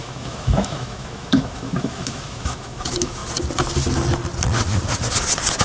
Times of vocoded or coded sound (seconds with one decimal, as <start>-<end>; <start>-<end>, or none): 0.0-3.2